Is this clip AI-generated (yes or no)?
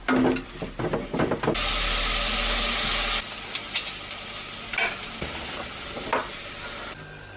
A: no